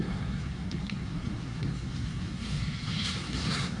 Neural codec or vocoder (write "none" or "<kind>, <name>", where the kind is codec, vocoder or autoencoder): codec, SNAC